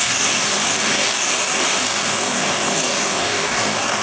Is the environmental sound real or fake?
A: fake